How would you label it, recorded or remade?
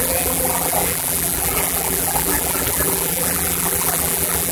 remade